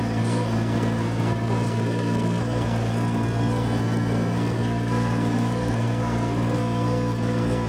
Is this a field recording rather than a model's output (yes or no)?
no